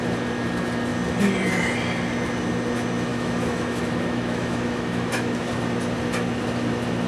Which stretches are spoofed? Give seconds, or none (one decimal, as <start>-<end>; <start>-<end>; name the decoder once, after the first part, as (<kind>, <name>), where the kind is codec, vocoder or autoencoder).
3.1-5.4 (autoencoder, DAC-VAE)